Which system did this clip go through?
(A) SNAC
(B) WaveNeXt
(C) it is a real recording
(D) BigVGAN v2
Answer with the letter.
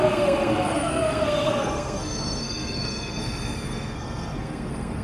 A